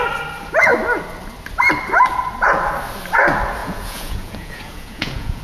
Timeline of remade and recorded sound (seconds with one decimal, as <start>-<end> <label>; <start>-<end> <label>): 0.0-3.6 recorded; 3.6-5.4 remade